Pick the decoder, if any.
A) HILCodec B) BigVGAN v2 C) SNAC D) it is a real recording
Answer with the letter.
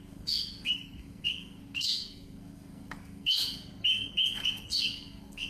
C